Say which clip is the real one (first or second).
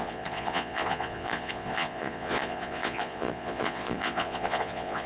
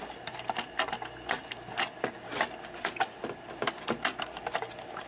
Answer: second